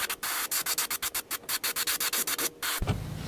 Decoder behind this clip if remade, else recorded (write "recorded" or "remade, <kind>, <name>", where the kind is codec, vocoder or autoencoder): recorded